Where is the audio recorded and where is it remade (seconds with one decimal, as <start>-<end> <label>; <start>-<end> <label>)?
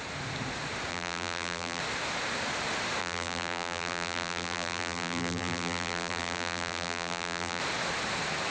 0.0-0.9 recorded; 0.9-1.8 remade; 1.8-3.0 recorded; 3.0-7.6 remade; 7.6-8.5 recorded